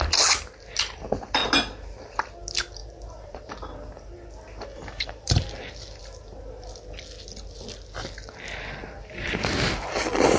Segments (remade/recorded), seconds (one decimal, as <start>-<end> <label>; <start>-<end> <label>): 0.0-2.8 recorded; 2.8-6.0 remade; 6.0-8.8 recorded; 8.8-9.3 remade; 9.3-10.4 recorded